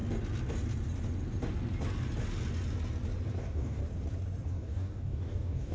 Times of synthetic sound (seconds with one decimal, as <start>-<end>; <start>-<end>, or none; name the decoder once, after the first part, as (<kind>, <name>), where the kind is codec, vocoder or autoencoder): 3.4-3.8 (codec, DAC); 4.5-5.7